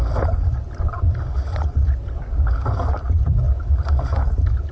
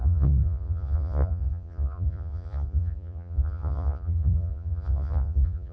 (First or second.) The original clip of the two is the first